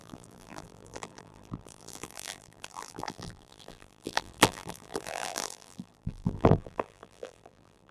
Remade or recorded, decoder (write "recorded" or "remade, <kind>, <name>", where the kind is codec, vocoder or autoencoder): remade, vocoder, BigVGAN v2